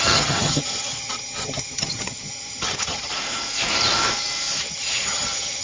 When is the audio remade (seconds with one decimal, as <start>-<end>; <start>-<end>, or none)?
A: 0.0-3.1; 4.6-5.6